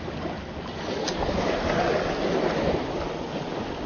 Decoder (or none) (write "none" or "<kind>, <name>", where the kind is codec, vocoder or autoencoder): none